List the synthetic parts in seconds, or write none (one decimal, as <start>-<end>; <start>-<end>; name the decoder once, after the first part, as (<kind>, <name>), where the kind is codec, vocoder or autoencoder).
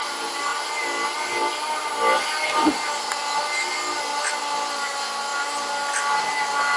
none